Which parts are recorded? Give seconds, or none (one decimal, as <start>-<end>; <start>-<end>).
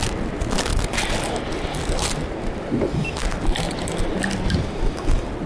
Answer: 0.0-5.5